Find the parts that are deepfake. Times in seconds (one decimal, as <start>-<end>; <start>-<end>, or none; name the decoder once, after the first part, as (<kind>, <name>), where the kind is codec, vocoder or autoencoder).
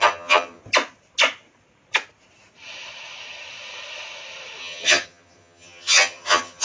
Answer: 0.0-0.6 (vocoder, HiFi-GAN); 4.6-6.6